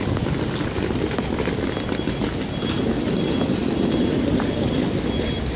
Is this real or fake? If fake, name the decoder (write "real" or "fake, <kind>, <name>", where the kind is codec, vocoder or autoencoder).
real